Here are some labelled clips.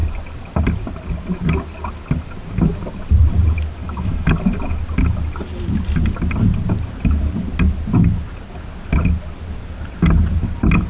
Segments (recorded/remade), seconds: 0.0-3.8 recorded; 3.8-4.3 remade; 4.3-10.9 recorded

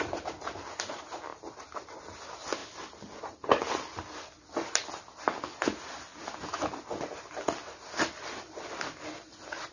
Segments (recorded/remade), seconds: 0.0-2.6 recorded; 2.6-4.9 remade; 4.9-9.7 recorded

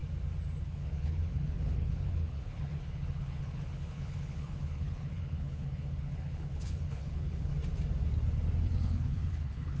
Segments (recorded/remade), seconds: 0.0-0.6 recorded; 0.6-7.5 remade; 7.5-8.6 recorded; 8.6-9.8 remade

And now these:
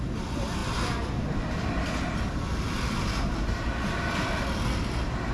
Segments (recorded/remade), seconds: 0.0-5.3 recorded

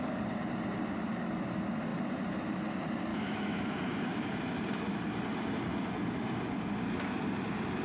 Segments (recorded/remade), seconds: 0.0-3.1 recorded; 3.1-4.3 remade; 4.3-7.8 recorded